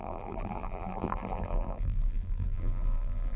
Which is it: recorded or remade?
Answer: remade